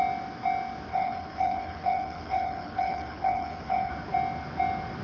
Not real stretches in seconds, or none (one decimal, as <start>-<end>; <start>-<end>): 0.9-3.9